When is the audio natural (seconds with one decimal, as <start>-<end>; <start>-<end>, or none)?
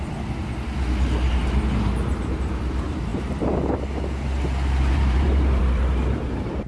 0.4-1.3; 3.1-4.9